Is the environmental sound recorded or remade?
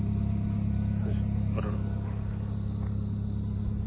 recorded